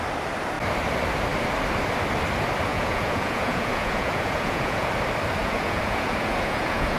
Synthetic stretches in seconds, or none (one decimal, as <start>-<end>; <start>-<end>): 2.7-4.9; 5.4-7.0